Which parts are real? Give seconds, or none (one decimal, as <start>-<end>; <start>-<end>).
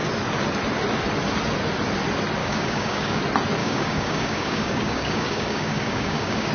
0.0-2.4; 3.2-3.6